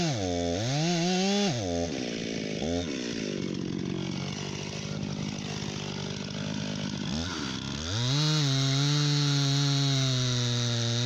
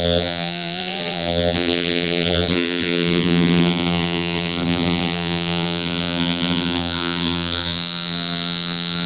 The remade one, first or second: second